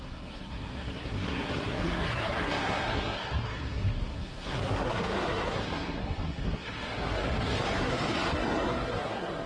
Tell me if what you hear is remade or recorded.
remade